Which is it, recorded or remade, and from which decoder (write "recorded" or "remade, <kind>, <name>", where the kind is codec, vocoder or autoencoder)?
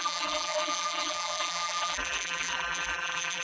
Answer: remade, vocoder, BigVGAN v2